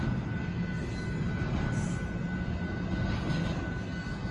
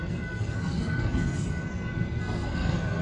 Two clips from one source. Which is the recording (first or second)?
first